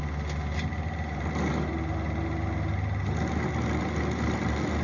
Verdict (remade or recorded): recorded